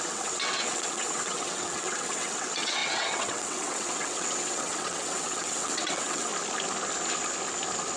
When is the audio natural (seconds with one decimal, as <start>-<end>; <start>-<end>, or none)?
6.3-8.0